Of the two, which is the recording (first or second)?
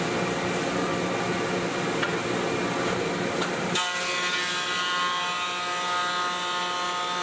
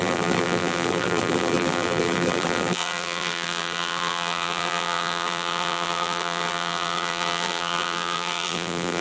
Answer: first